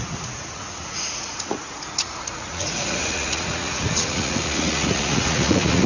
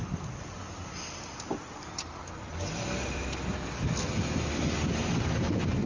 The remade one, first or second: first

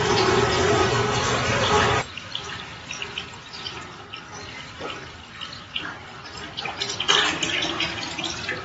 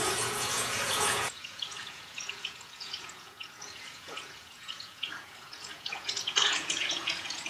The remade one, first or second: second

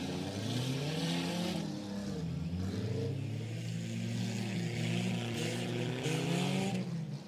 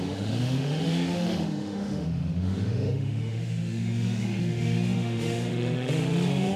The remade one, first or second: second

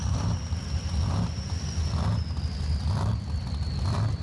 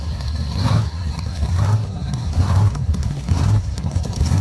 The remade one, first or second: second